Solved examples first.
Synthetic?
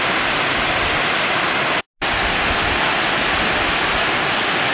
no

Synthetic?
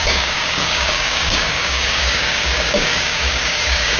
yes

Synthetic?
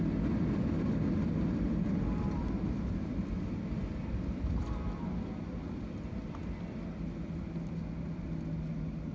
no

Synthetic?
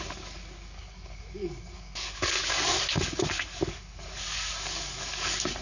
yes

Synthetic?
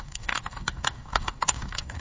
yes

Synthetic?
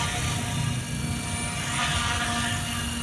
no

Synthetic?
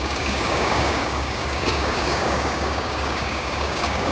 yes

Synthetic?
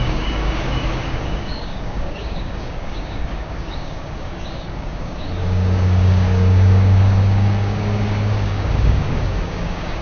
yes